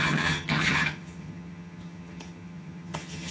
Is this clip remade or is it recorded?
remade